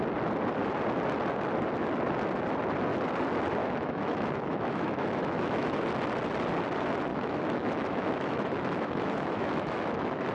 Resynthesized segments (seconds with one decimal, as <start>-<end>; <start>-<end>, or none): 3.6-5.7; 7.1-10.3